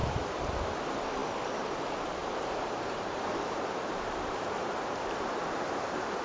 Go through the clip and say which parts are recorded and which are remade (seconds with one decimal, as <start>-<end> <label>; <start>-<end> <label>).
0.0-0.5 remade; 0.5-2.2 recorded; 2.2-6.2 remade